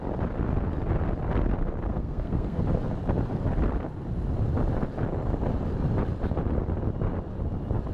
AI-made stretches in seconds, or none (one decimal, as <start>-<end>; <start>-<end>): 1.9-2.6